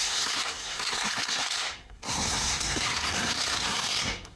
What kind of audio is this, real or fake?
fake